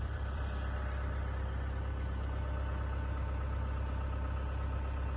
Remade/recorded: remade